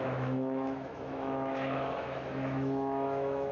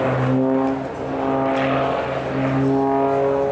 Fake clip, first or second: first